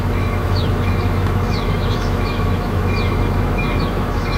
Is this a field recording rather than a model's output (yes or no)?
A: no